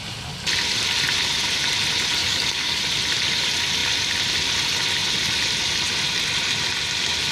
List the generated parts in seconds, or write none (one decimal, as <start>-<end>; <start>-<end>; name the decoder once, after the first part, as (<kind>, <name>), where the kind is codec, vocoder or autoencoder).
2.2-2.8 (codec, DAC)